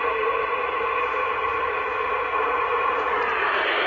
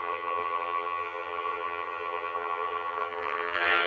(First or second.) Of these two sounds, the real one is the first